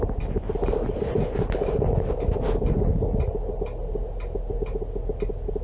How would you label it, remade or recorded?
recorded